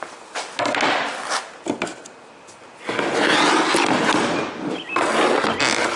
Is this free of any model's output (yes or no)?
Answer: yes